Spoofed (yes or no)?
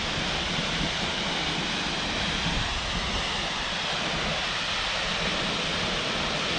no